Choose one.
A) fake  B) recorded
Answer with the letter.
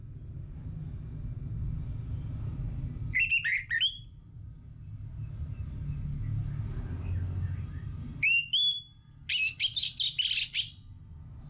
B